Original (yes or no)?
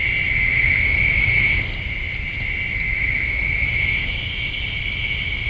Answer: yes